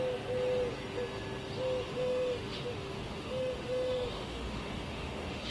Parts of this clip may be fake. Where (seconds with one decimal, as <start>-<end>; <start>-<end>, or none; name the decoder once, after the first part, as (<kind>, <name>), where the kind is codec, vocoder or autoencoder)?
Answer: 1.9-5.5 (autoencoder, DAC-VAE)